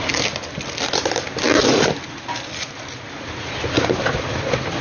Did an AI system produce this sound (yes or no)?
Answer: no